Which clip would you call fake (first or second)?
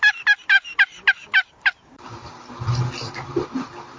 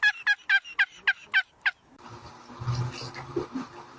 first